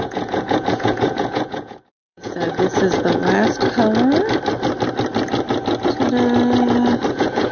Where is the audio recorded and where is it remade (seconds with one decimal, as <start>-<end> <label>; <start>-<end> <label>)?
0.0-3.2 remade; 3.2-7.1 recorded; 7.1-7.5 remade